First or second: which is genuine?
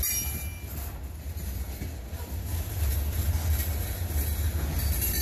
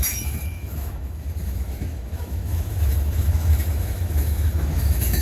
first